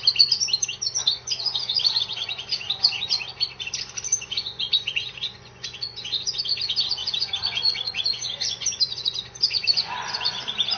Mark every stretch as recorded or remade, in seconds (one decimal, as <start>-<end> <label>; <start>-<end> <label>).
0.0-1.0 recorded; 1.0-3.2 remade; 3.2-4.1 recorded; 4.1-6.4 remade; 6.4-7.0 recorded; 7.0-10.4 remade; 10.4-10.8 recorded